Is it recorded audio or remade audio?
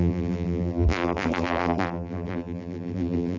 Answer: remade